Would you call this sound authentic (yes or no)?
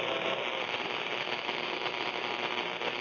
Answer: yes